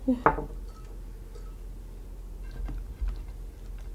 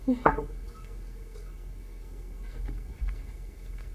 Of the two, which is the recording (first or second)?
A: first